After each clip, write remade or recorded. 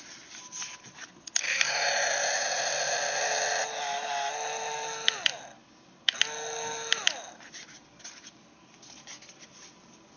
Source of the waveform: recorded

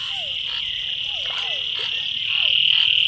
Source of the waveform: recorded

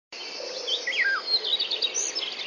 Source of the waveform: recorded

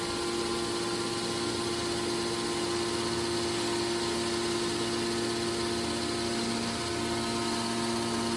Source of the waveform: recorded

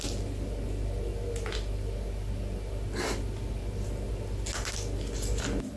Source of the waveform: recorded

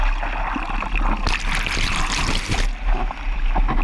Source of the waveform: recorded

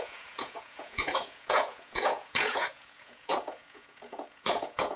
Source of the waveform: remade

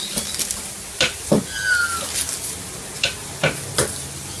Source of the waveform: recorded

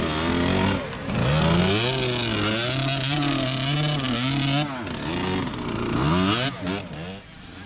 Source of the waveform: recorded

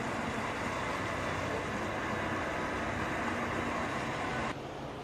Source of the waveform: recorded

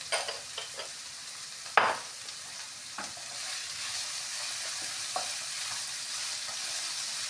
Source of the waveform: remade